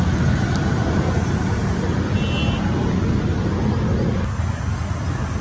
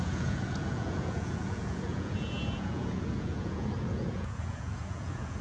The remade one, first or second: second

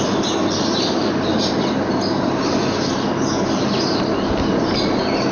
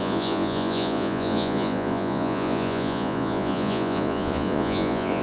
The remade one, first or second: second